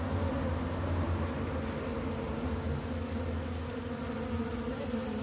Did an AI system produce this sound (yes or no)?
no